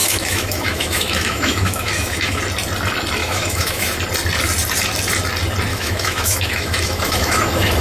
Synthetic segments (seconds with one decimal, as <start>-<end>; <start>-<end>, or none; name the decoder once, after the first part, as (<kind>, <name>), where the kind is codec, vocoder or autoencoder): 0.0-2.4 (autoencoder, DAC-VAE); 3.2-4.0; 5.7-7.8